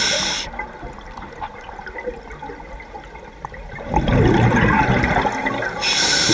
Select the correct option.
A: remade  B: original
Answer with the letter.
B